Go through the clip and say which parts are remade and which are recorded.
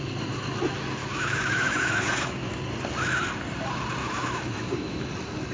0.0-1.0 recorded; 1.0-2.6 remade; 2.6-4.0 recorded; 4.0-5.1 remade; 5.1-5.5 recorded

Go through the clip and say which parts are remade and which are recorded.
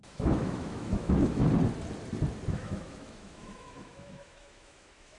0.0-1.4 remade; 1.4-2.5 recorded; 2.5-5.2 remade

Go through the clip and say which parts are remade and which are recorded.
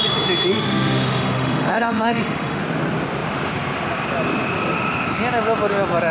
0.0-0.5 recorded; 0.5-2.6 remade; 2.6-6.1 recorded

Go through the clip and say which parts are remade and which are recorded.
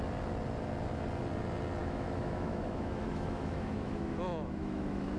0.0-1.8 recorded; 1.8-5.2 remade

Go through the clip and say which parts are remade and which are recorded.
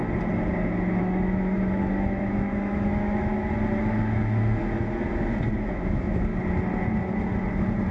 0.0-1.0 recorded; 1.0-3.3 remade; 3.3-3.9 recorded; 3.9-4.6 remade; 4.6-5.7 recorded; 5.7-6.3 remade; 6.3-7.9 recorded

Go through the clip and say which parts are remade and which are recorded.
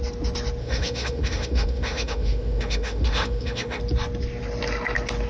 0.0-0.6 recorded; 0.6-3.8 remade; 3.8-5.3 recorded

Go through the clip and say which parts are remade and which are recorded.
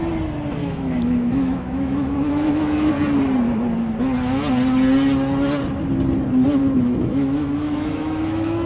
0.0-0.6 recorded; 0.6-2.9 remade; 2.9-6.6 recorded; 6.6-8.7 remade